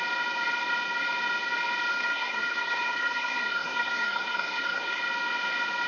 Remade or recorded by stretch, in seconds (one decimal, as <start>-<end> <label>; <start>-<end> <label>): 0.0-1.9 recorded; 1.9-5.0 remade; 5.0-5.9 recorded